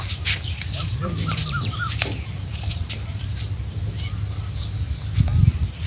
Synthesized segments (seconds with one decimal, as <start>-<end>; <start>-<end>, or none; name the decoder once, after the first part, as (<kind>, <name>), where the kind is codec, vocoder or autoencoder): 0.0-3.3 (vocoder, BigVGAN v2); 5.4-5.9